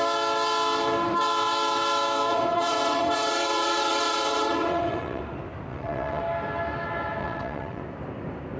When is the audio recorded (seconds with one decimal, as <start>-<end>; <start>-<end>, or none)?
0.0-2.3; 5.2-5.7; 6.2-7.2; 7.8-8.6